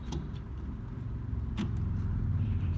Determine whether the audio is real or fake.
real